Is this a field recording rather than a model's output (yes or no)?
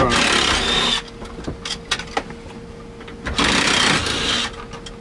yes